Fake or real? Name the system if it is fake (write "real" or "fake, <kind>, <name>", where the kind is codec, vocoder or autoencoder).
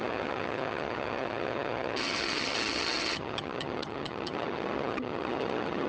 fake, vocoder, HiFi-GAN